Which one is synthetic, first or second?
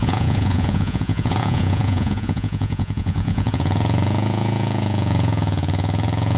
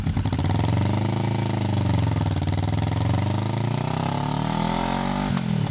first